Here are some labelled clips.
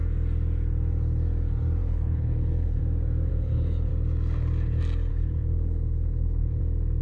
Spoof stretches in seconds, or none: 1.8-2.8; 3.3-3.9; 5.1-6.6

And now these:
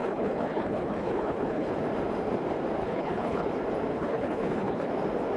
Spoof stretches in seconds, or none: 0.0-1.7; 2.8-3.5; 3.9-4.9